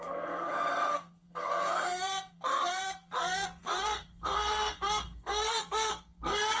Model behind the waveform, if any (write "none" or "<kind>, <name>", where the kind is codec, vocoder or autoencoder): codec, SNAC